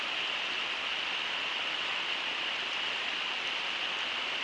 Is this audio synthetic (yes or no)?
no